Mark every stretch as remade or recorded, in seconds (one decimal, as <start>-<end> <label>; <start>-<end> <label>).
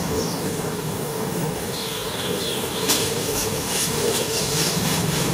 0.0-5.3 remade